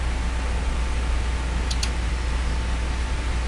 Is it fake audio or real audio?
real